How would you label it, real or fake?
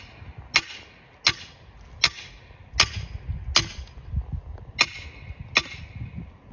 real